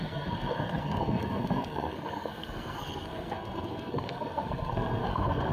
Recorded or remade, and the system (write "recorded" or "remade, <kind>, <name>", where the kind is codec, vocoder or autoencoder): remade, codec, SNAC